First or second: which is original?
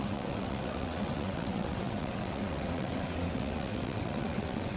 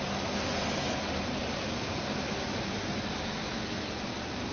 second